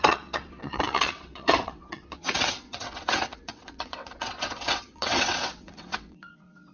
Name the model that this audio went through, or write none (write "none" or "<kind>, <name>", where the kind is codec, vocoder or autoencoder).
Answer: vocoder, WaveNeXt